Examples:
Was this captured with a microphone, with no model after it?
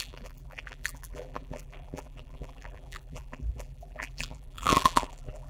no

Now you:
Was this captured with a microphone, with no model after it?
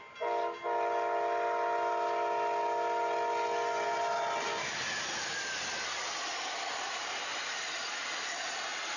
yes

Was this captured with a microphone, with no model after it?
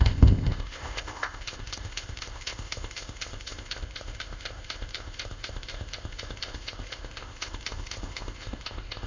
no